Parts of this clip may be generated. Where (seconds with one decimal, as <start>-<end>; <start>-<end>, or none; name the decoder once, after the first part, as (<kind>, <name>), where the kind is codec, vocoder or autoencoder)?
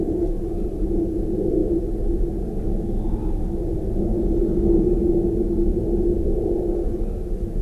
none